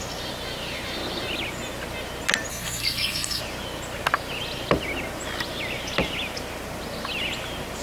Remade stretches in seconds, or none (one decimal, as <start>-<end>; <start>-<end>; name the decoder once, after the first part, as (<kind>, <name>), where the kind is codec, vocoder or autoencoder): 2.5-3.4 (codec, SNAC)